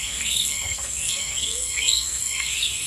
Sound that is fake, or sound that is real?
fake